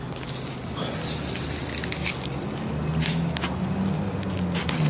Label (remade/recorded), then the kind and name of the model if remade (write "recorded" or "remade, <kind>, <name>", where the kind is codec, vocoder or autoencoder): recorded